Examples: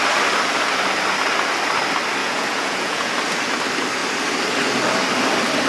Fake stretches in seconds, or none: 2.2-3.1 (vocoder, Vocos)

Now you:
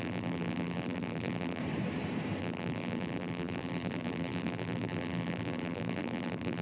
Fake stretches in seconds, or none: 0.0-1.6 (vocoder, BigVGAN v2); 2.4-6.6

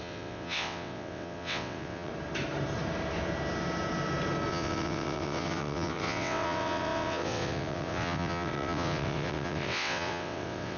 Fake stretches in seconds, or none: 0.0-2.1 (vocoder, WaveNeXt); 4.5-10.8

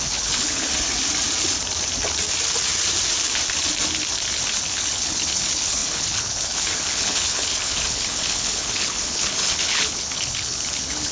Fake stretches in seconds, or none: 0.0-0.7 (codec, HILCodec); 4.7-11.1

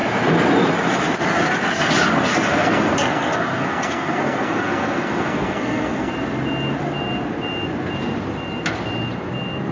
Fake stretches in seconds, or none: 2.3-6.1 (codec, SNAC)